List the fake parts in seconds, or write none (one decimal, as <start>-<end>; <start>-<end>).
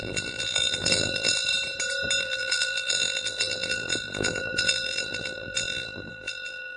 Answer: 0.0-1.5; 2.2-6.8